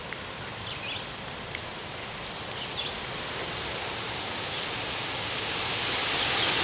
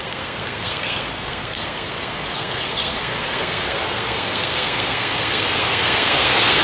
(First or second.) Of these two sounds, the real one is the first